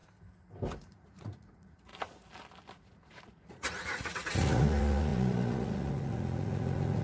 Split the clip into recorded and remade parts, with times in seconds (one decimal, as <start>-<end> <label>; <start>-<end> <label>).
0.0-0.9 recorded; 0.9-1.9 remade; 1.9-2.7 recorded; 2.7-7.0 remade